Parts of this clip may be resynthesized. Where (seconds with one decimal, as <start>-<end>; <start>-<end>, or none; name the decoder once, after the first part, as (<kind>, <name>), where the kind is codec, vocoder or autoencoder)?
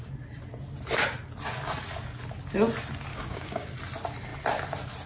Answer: 3.1-3.8 (codec, DAC)